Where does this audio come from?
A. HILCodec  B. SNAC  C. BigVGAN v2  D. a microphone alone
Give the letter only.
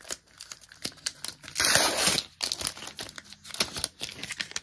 D